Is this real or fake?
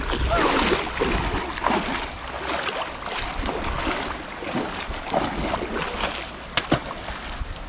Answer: real